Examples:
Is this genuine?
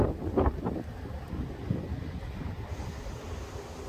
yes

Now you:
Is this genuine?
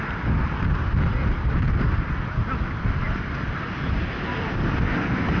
yes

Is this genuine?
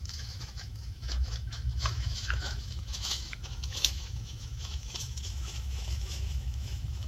no